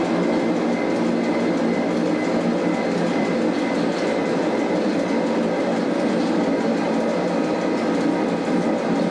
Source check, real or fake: real